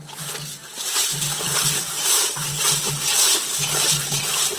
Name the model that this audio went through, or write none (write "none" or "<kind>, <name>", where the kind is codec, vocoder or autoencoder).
vocoder, BigVGAN v2